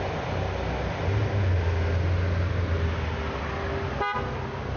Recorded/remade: recorded